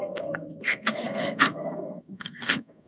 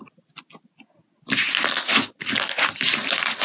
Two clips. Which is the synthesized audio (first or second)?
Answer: first